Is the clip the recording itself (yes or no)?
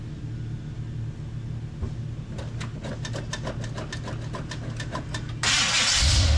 yes